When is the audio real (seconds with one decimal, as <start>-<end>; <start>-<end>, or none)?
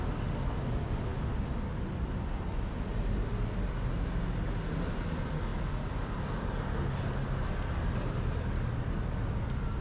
0.0-9.8